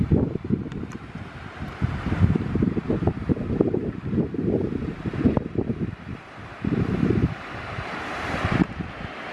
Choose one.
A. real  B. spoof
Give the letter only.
B